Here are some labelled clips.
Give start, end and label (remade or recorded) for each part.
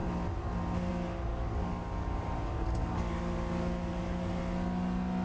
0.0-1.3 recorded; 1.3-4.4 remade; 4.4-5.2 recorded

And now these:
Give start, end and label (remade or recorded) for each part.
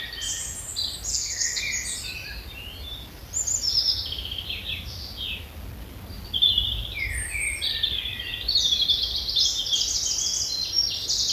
0.0-1.1 recorded; 1.1-1.6 remade; 1.6-11.3 recorded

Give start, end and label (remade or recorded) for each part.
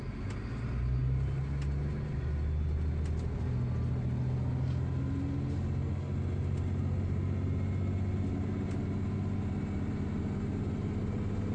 0.0-11.5 recorded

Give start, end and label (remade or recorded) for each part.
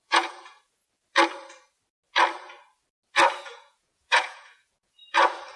0.0-0.8 remade; 0.8-3.4 recorded; 3.4-5.0 remade; 5.0-5.6 recorded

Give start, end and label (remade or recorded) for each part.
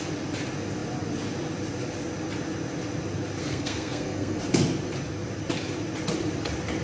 0.0-3.4 recorded; 3.4-4.4 remade; 4.4-6.8 recorded